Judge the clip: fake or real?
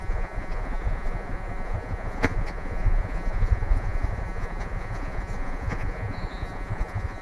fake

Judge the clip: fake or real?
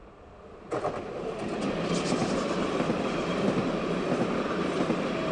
real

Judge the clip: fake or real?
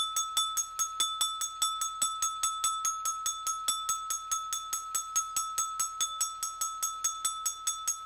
real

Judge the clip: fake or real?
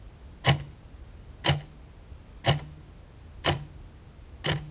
real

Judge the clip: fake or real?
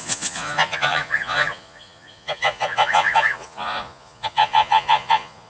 fake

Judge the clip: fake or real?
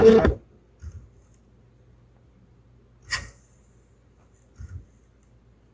real